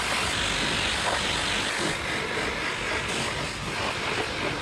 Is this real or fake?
real